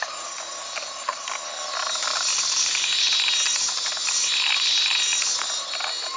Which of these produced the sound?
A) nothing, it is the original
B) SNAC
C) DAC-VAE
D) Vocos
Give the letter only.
A